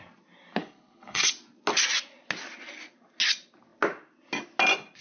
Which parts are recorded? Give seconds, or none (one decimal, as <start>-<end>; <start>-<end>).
0.0-0.6; 1.3-5.0